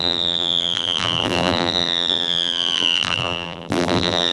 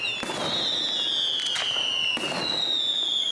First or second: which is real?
second